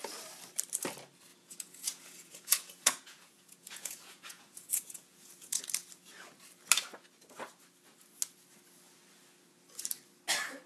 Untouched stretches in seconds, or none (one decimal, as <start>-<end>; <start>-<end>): 0.0-1.3; 5.6-10.7